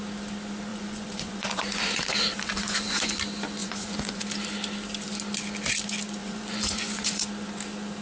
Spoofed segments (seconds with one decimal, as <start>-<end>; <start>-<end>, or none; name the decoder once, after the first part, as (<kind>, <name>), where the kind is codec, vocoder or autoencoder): 0.7-3.2 (vocoder, Vocos); 3.6-4.2; 6.2-7.2